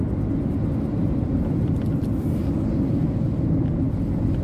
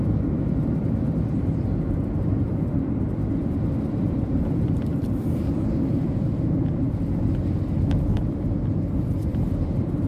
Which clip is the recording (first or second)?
first